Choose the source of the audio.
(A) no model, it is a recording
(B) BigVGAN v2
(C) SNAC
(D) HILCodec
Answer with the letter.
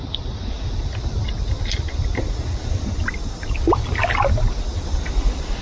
A